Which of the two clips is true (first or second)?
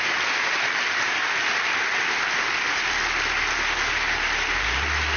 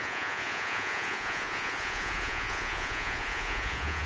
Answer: first